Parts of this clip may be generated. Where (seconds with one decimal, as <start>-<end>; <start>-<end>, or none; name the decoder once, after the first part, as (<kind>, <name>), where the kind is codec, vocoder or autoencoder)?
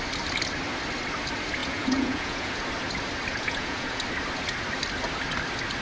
1.6-2.6 (vocoder, Vocos); 3.3-4.0